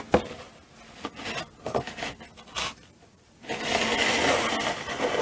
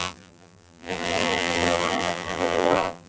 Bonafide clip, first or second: first